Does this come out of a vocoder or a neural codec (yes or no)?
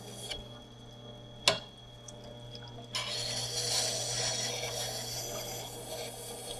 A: no